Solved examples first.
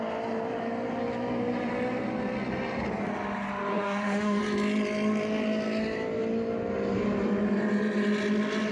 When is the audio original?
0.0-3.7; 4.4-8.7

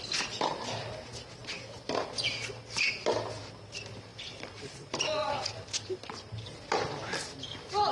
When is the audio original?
0.0-4.1; 5.5-7.9

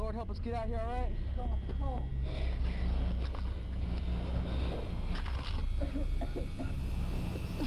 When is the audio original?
0.0-7.7

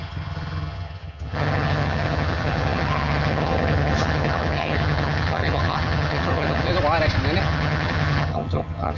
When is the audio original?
6.7-7.4

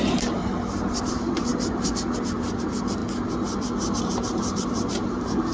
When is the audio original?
0.4-1.0; 1.5-2.6; 3.0-4.0

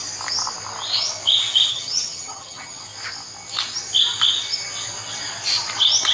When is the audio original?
0.0-1.7; 2.8-6.1